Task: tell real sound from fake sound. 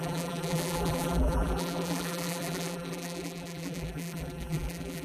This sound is fake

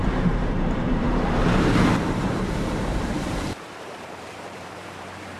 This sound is fake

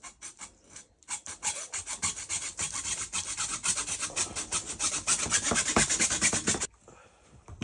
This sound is fake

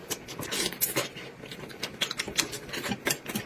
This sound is real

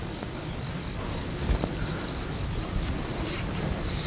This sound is real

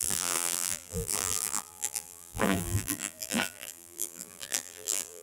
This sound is fake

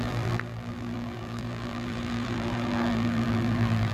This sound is fake